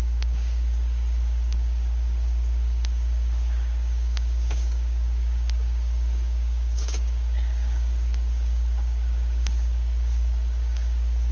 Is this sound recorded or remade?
remade